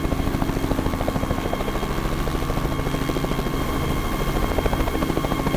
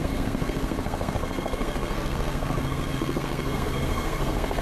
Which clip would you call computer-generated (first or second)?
second